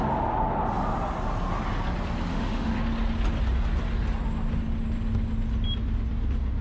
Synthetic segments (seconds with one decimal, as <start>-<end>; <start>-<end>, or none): 2.3-2.8